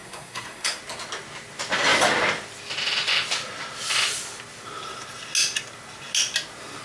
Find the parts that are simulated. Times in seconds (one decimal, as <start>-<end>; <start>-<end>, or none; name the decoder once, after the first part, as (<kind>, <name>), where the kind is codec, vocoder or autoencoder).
0.0-0.8 (codec, SNAC)